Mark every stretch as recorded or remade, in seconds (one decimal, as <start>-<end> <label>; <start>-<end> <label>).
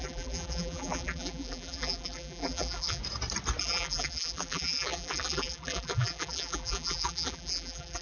0.0-3.0 remade; 3.0-3.6 recorded; 3.6-8.0 remade